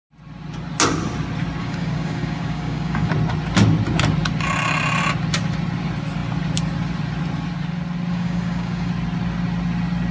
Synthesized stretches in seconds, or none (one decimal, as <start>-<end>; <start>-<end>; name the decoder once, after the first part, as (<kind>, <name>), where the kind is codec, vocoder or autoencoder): 1.6-3.1 (codec, DAC); 8.1-8.9